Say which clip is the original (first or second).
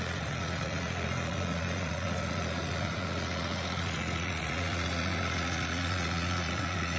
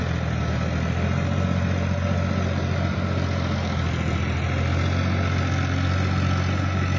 second